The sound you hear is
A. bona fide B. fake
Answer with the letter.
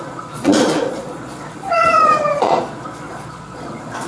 B